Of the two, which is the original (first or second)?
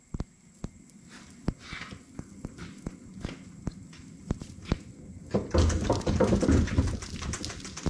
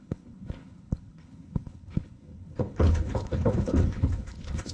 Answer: first